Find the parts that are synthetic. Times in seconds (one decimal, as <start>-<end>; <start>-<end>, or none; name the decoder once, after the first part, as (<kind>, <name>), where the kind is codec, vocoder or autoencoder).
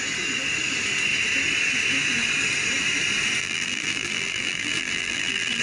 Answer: 3.4-5.6 (vocoder, BigVGAN v2)